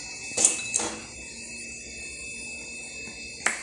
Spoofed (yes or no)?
no